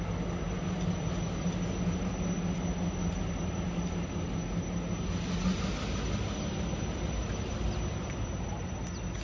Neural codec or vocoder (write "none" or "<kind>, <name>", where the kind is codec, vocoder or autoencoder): none